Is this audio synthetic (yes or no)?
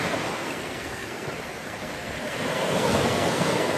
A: yes